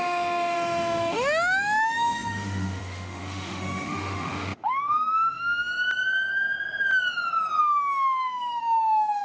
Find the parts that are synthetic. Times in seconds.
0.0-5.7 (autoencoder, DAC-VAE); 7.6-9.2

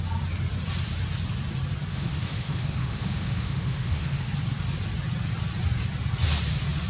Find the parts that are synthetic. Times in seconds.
1.9-4.3 (autoencoder, DAC-VAE)

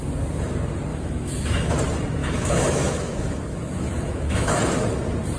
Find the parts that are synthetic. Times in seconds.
0.9-1.8 (autoencoder, DAC-VAE); 2.2-4.6

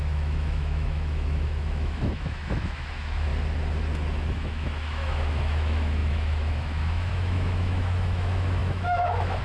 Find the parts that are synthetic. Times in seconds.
0.0-3.3 (autoencoder, DAC-VAE); 4.3-9.4

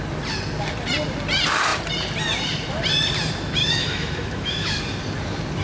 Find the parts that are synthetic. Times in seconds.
3.6-4.8 (autoencoder, DAC-VAE)

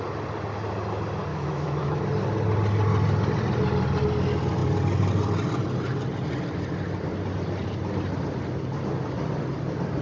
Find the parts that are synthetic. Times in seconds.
1.3-2.0 (autoencoder, DAC-VAE)